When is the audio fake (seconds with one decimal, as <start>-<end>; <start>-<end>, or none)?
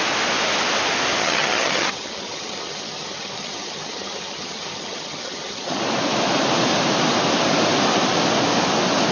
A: 1.2-5.8